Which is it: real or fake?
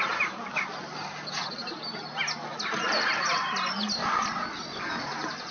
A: real